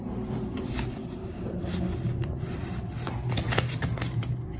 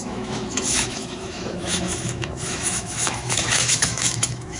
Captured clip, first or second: first